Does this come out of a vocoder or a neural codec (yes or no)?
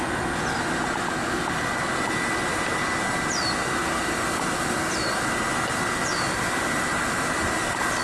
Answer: no